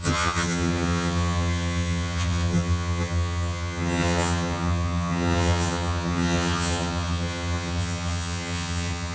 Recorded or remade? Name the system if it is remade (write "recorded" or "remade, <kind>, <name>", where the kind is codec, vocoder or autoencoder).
remade, vocoder, HiFi-GAN